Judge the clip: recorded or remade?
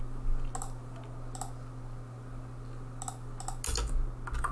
recorded